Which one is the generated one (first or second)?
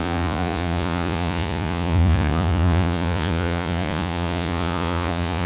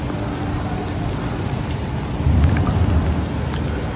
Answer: first